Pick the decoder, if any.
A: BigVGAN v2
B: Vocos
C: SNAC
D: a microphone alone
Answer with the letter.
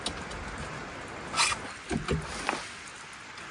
D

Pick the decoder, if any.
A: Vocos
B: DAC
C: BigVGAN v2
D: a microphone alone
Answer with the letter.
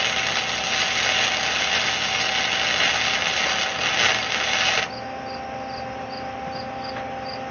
D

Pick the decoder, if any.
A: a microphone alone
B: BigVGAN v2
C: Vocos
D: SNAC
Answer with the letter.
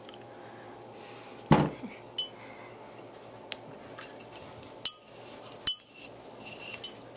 A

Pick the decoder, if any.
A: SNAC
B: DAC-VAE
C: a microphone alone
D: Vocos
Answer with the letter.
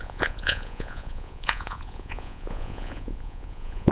D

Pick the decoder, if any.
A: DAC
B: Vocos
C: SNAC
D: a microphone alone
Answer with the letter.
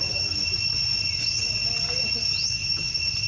D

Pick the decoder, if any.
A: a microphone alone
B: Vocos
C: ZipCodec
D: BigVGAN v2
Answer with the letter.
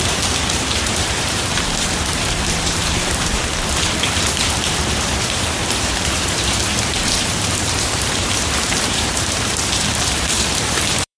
D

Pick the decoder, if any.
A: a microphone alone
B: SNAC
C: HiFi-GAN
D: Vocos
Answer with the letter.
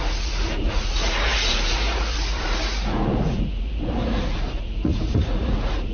D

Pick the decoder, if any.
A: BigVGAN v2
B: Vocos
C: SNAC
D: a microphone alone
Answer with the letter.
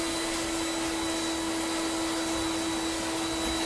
D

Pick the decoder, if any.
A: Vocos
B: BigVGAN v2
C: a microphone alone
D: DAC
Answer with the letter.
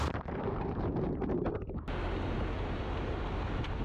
C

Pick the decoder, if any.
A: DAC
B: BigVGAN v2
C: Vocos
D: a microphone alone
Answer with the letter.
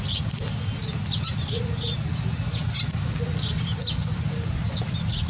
D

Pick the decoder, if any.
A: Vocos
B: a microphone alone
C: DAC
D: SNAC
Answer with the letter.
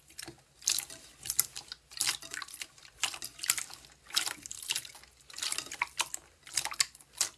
B